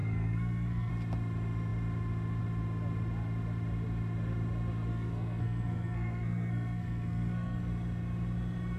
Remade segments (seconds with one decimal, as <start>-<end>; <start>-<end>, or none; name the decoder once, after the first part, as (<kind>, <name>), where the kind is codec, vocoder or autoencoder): 0.0-0.9 (codec, SNAC); 4.9-7.7